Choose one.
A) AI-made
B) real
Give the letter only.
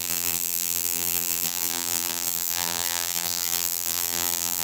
A